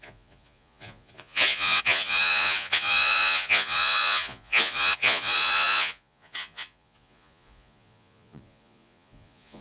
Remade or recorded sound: remade